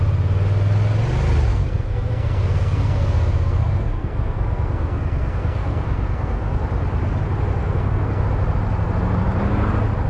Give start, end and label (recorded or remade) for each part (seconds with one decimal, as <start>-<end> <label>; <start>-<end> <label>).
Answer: 0.0-1.5 recorded; 1.5-6.6 remade; 6.6-7.6 recorded; 7.6-8.2 remade; 8.2-10.1 recorded